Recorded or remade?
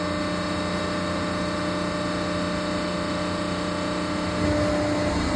recorded